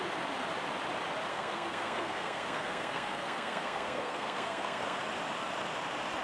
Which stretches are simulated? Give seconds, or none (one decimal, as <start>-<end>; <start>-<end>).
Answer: 1.3-5.0